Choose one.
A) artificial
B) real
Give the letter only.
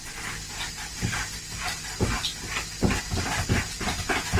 B